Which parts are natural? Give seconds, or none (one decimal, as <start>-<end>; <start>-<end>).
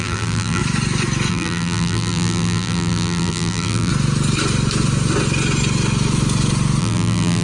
0.6-1.3; 3.9-6.8